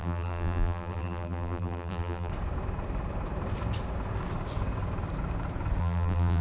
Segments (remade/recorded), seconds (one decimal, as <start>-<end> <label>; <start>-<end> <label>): 0.0-2.3 remade; 2.3-5.8 recorded; 5.8-6.4 remade